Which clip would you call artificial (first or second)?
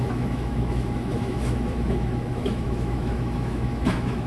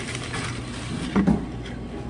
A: first